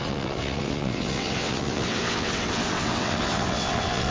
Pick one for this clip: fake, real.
fake